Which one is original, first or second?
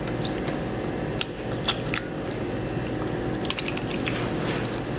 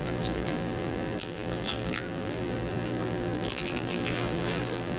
first